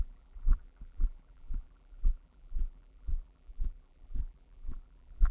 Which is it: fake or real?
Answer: fake